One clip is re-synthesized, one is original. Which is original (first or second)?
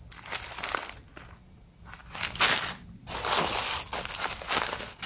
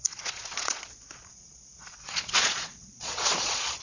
first